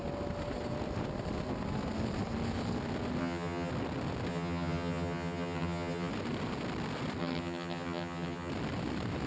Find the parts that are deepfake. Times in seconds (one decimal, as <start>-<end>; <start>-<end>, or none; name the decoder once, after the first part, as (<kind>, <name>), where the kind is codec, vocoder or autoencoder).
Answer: 3.2-3.7 (vocoder, HiFi-GAN); 4.3-6.1; 7.2-8.5